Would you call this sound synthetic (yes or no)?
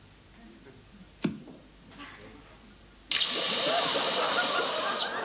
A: no